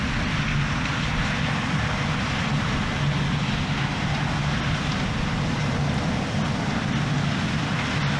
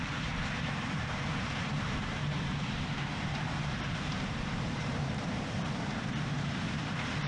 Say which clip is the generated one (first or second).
second